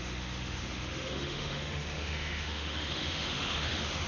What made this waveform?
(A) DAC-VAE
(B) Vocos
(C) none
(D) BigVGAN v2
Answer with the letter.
A